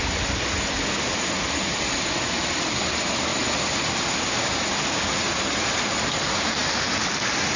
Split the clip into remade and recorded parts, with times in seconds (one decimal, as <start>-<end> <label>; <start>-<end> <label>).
0.0-7.6 recorded